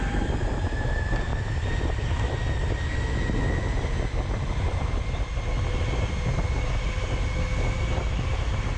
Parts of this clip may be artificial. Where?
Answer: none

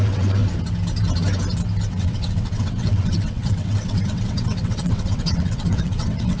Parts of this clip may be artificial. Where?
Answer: 0.0-0.4 (vocoder, WaveNeXt); 1.9-6.4

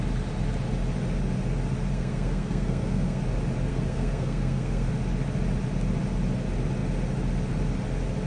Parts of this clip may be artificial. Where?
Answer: 1.9-3.2 (codec, SNAC); 3.7-4.9